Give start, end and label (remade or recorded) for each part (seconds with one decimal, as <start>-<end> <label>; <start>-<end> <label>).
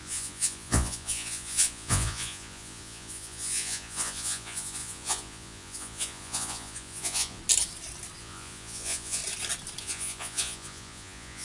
0.0-7.4 remade; 7.4-8.2 recorded; 8.2-9.2 remade; 9.2-9.8 recorded; 9.8-11.4 remade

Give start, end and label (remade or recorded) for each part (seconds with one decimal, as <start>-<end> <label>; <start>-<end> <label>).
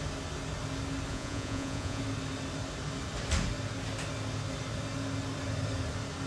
0.0-1.1 recorded; 1.1-2.0 remade; 2.0-6.3 recorded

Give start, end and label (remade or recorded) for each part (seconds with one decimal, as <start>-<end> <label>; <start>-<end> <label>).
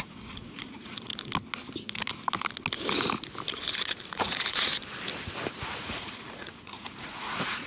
0.0-1.1 remade; 1.1-3.5 recorded; 3.5-4.7 remade; 4.7-5.8 recorded; 5.8-7.7 remade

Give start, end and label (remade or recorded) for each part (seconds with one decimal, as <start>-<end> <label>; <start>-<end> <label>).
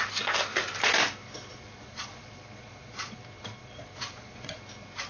0.0-1.5 recorded; 1.5-3.2 remade; 3.2-3.6 recorded; 3.6-4.6 remade; 4.6-5.1 recorded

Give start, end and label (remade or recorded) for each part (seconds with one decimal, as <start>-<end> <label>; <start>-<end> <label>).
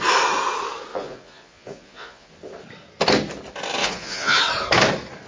0.0-0.9 recorded; 0.9-2.3 remade; 2.3-3.8 recorded; 3.8-4.4 remade; 4.4-5.3 recorded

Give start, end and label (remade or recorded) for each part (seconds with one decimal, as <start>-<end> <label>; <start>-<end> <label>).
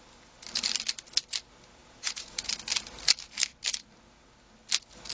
0.0-1.8 recorded; 1.8-2.5 remade; 2.5-5.1 recorded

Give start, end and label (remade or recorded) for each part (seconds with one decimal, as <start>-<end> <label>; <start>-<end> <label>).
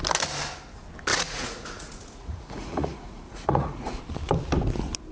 0.0-1.1 recorded; 1.1-4.0 remade; 4.0-5.1 recorded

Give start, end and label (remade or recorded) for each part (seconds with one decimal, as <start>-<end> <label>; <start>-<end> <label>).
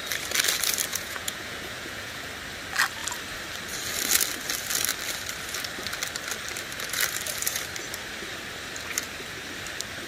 0.0-0.9 recorded; 0.9-2.2 remade; 2.2-10.1 recorded